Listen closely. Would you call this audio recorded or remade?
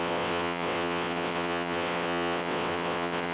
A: remade